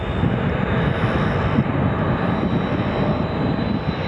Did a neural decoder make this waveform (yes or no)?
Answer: no